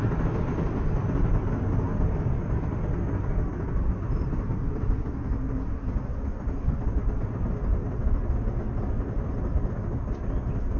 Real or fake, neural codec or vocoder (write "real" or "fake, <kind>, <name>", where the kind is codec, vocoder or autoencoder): real